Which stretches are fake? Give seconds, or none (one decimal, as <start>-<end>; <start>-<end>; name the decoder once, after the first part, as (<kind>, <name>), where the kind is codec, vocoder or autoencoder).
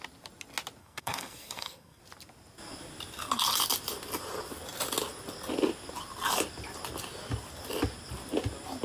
0.8-2.0 (codec, SNAC)